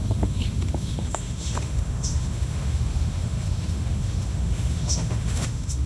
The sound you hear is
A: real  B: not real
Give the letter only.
B